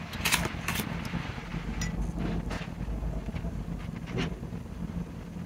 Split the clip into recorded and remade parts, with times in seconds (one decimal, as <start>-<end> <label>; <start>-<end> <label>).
0.0-5.5 recorded